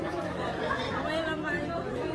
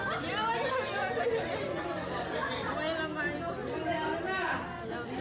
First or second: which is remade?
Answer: first